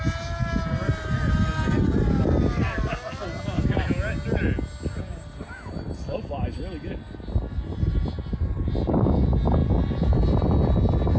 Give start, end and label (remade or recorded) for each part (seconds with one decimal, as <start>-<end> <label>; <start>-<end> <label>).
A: 0.0-11.2 recorded